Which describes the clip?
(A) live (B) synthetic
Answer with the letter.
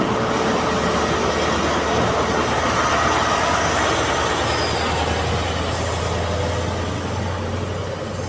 A